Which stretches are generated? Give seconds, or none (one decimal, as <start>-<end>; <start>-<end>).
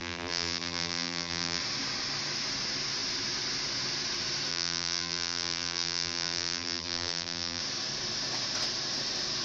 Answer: 0.0-1.6; 4.5-7.6